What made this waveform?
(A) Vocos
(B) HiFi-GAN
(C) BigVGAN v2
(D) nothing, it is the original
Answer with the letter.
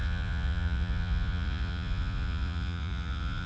A